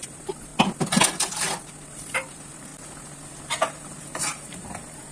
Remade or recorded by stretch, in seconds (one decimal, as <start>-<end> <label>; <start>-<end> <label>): 0.0-0.5 remade; 0.5-2.1 recorded; 2.1-2.7 remade; 2.7-3.7 recorded; 3.7-5.1 remade